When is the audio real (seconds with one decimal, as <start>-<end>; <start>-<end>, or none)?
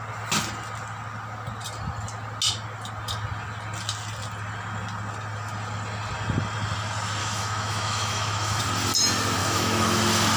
0.0-7.2; 8.6-9.4; 10.0-10.4